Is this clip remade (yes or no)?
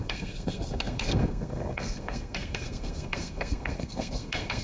yes